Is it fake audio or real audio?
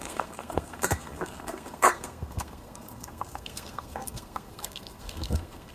fake